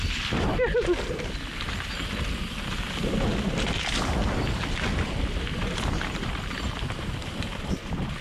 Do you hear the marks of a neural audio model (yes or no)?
no